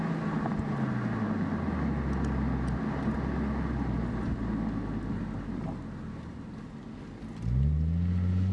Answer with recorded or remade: recorded